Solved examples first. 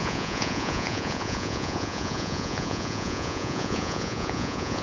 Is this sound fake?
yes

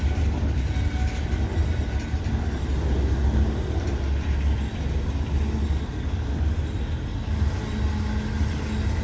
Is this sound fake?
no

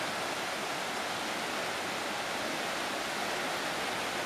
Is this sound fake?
no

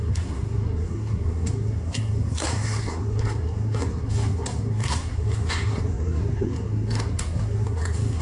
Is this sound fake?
yes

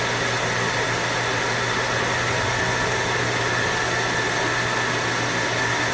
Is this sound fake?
no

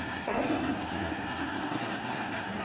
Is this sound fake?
yes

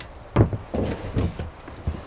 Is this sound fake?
no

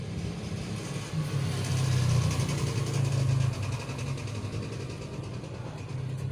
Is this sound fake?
no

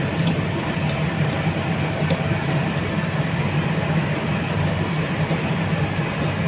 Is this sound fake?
no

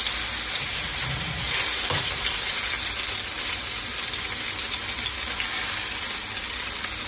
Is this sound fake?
no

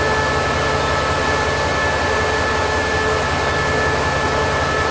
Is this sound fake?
no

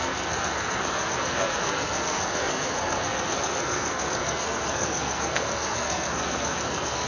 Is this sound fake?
yes